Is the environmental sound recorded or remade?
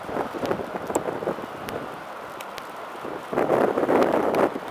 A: remade